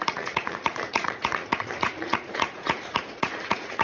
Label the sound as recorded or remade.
remade